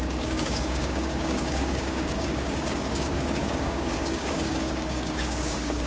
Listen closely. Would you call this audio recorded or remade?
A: remade